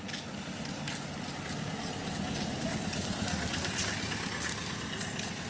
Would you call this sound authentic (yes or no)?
no